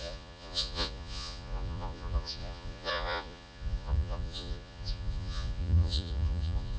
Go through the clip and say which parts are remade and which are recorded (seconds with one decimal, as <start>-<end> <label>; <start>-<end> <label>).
0.0-6.8 remade